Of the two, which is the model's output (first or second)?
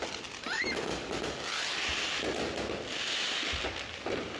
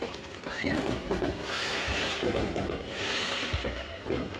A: second